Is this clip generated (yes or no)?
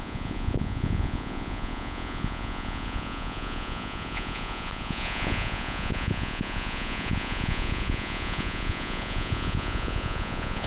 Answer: yes